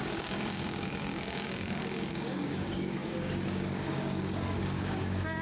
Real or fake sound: fake